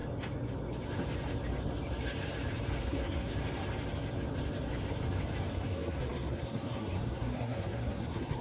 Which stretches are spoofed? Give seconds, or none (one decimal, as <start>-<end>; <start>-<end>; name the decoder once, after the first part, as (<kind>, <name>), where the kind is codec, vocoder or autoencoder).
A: 2.8-3.3 (codec, SNAC); 5.5-8.4